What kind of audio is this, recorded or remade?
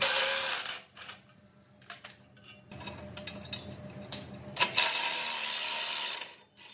recorded